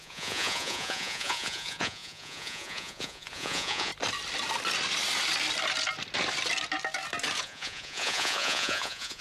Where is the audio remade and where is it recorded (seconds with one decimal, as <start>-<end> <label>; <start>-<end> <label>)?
0.0-3.9 remade; 3.9-7.4 recorded; 7.4-9.2 remade